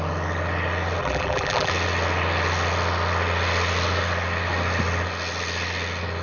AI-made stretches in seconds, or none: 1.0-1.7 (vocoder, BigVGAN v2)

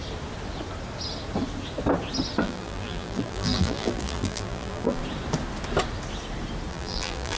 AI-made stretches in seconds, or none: 2.4-5.0 (vocoder, BigVGAN v2); 6.7-7.4

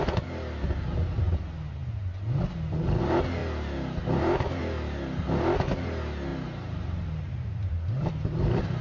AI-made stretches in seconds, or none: 6.3-8.1 (vocoder, BigVGAN v2)

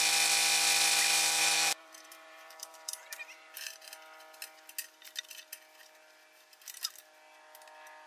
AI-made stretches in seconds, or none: 1.2-3.9 (vocoder, BigVGAN v2)

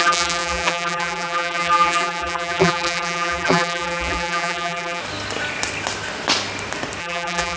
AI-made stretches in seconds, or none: 0.0-5.0 (vocoder, BigVGAN v2); 7.0-7.6